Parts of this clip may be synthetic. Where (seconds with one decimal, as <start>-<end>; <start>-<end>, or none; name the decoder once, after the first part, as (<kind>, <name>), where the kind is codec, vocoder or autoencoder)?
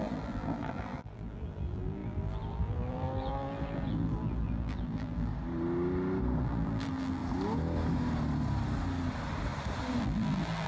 0.0-5.3 (vocoder, BigVGAN v2); 6.4-7.2; 10.0-10.7